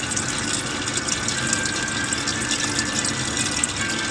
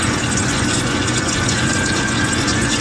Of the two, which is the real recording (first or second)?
first